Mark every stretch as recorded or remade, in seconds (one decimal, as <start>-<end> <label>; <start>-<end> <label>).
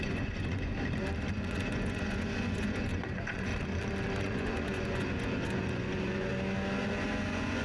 0.0-0.7 remade; 0.7-1.3 recorded; 1.3-3.5 remade; 3.5-4.2 recorded; 4.2-6.3 remade; 6.3-6.8 recorded; 6.8-7.6 remade